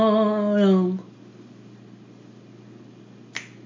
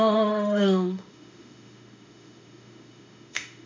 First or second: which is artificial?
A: second